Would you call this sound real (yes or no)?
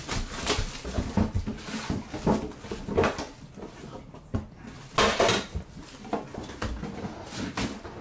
yes